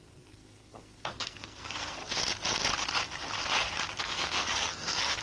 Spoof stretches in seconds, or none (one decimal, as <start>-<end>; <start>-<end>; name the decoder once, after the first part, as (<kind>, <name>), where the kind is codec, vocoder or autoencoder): 0.0-2.0 (codec, SNAC); 4.0-5.2